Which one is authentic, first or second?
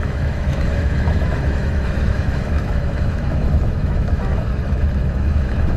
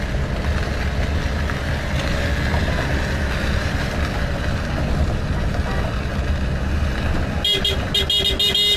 second